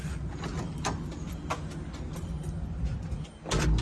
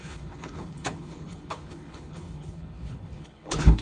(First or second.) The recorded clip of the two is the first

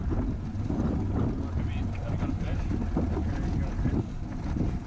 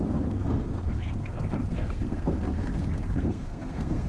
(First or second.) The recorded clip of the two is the first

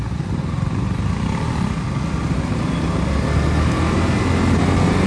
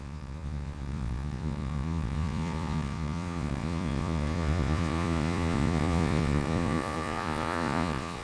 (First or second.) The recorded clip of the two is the first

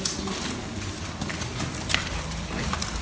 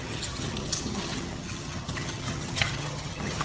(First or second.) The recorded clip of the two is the first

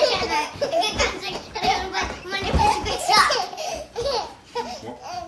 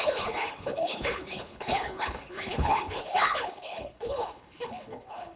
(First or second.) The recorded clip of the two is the first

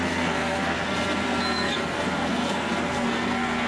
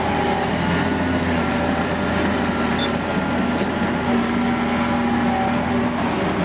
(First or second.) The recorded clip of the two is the second